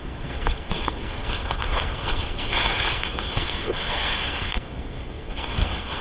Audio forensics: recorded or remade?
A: remade